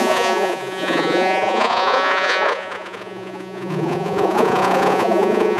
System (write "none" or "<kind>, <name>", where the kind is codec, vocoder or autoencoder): vocoder, Vocos